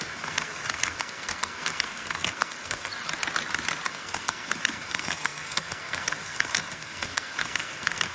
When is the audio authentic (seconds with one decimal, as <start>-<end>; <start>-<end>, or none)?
2.9-3.9